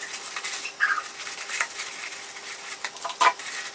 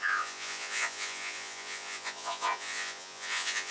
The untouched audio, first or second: first